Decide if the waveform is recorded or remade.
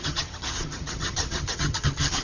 remade